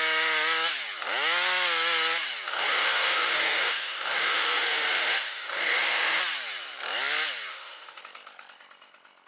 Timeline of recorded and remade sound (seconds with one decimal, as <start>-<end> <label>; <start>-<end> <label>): 0.0-2.5 recorded; 2.5-6.2 remade; 6.2-7.5 recorded; 7.5-8.0 remade; 8.0-9.3 recorded

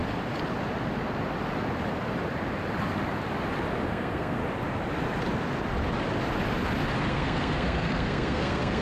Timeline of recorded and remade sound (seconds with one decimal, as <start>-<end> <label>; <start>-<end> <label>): 0.0-3.9 recorded; 3.9-4.4 remade; 4.4-7.1 recorded; 7.1-8.8 remade

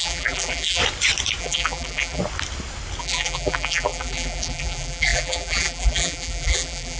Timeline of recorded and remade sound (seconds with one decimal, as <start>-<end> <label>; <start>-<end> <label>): 0.0-0.8 remade; 0.8-1.4 recorded; 1.4-2.2 remade; 2.2-3.0 recorded; 3.0-7.0 remade

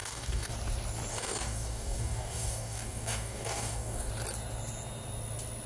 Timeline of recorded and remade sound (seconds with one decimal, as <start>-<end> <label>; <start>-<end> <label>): 0.0-0.5 remade; 0.5-1.1 recorded; 1.1-4.1 remade; 4.1-5.7 recorded

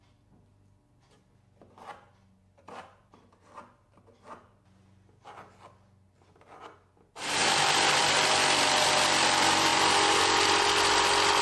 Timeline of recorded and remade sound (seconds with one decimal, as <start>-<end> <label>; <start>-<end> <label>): 0.0-7.4 recorded; 7.4-8.0 remade; 8.0-9.7 recorded; 9.7-10.5 remade; 10.5-11.4 recorded

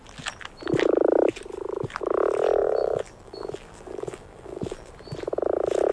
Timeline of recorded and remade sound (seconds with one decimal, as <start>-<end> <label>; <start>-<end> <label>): 0.0-2.6 recorded; 2.6-4.9 remade; 4.9-5.9 recorded

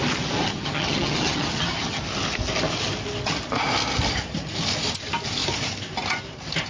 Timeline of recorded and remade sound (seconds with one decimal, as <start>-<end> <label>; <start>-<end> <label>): 0.0-0.5 recorded; 0.5-2.0 remade; 2.0-6.7 recorded

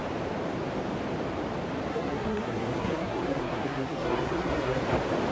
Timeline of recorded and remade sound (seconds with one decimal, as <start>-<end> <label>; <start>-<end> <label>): 0.0-1.9 recorded; 1.9-4.8 remade; 4.8-5.3 recorded